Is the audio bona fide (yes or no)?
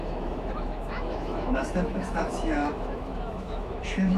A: no